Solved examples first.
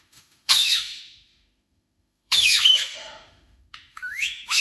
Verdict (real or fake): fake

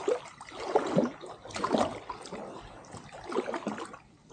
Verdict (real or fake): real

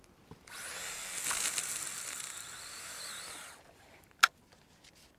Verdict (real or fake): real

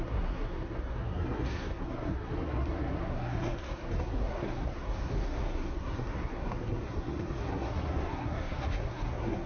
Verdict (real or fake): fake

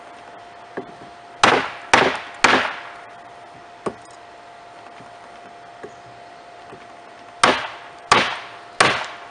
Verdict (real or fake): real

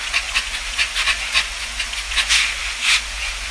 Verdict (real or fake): fake